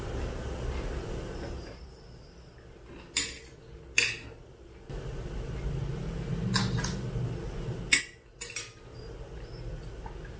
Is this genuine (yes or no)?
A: yes